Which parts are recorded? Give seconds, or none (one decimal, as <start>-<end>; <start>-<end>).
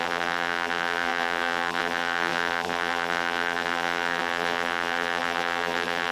none